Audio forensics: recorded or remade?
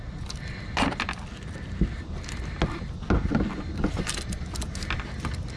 recorded